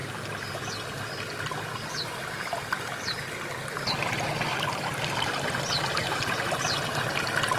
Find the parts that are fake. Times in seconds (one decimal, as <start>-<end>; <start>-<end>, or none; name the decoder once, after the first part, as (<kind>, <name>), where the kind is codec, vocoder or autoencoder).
none